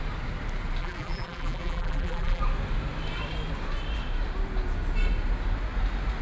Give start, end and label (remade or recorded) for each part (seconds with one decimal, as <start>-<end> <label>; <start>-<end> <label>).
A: 0.0-0.8 recorded; 0.8-2.4 remade; 2.4-6.2 recorded